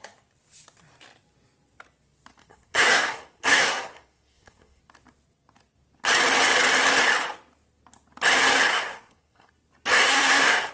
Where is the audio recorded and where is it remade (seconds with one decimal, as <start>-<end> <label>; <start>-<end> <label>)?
0.0-2.4 recorded; 2.4-4.8 remade; 4.8-8.7 recorded; 8.7-9.5 remade; 9.5-9.9 recorded; 9.9-10.7 remade